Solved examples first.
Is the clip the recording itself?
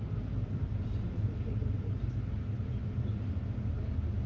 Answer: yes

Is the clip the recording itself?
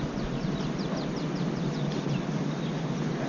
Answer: yes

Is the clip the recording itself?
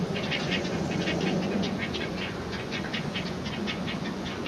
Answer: no